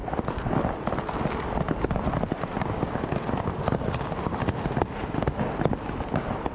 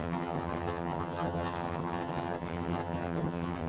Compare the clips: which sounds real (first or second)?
first